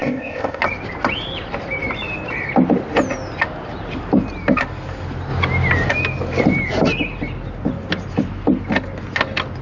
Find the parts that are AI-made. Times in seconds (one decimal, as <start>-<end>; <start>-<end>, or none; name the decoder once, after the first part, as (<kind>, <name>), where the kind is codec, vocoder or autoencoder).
0.0-0.6 (codec, ZipCodec)